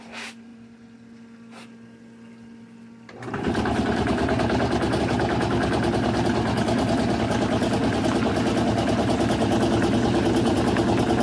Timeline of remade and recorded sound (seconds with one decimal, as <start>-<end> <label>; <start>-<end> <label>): 0.0-11.2 recorded